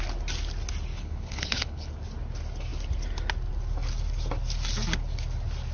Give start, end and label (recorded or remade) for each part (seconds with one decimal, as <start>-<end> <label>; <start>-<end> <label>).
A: 0.0-0.9 recorded; 0.9-1.9 remade; 1.9-5.7 recorded